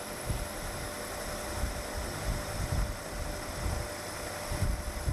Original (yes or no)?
yes